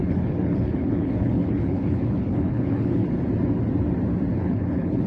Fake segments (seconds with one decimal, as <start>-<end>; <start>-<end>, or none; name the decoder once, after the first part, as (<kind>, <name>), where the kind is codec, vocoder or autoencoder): 0.0-3.1 (codec, HILCodec); 4.3-5.1